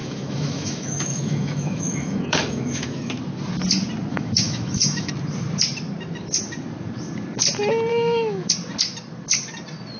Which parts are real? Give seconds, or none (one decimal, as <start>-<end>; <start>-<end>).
3.1-4.1; 5.1-7.9; 8.5-10.0